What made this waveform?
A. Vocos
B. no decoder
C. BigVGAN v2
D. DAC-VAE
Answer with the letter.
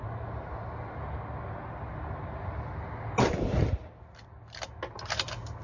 B